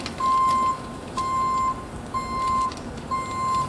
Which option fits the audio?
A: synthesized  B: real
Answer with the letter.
B